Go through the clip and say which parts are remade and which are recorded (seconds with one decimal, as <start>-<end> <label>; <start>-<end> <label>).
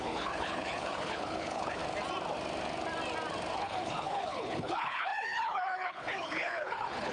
0.0-1.8 remade; 1.8-3.5 recorded; 3.5-7.1 remade